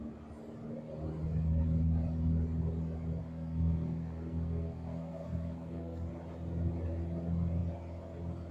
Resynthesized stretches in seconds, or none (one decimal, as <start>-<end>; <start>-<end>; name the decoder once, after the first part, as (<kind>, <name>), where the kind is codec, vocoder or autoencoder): 3.2-6.1 (codec, SNAC)